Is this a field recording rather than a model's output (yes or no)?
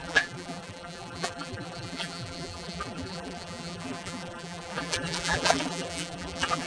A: no